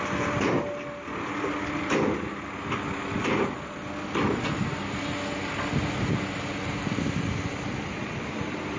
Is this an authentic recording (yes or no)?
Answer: yes